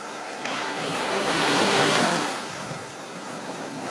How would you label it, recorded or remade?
remade